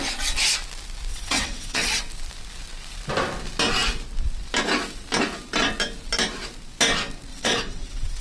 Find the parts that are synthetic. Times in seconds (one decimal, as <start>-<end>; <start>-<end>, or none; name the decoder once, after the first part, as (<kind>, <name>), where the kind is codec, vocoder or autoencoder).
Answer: 1.1-2.0 (vocoder, WaveNeXt); 7.3-8.2